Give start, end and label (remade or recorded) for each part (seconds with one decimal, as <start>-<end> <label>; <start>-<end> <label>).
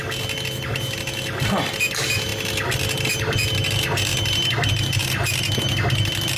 0.0-6.4 recorded